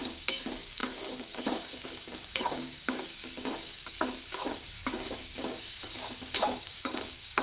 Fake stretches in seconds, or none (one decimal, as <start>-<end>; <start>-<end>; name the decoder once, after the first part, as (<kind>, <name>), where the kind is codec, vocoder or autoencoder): 0.0-7.4 (codec, DAC)